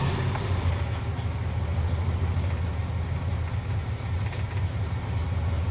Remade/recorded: recorded